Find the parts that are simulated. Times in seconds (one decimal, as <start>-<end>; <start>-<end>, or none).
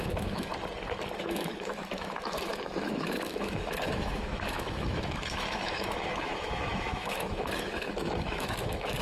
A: 0.0-0.5; 1.2-9.0